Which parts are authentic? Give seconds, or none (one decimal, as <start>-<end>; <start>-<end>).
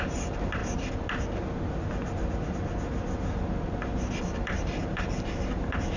0.6-4.2